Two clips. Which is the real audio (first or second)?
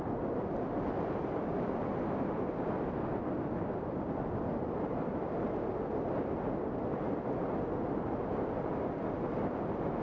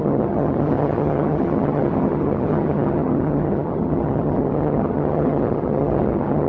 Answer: first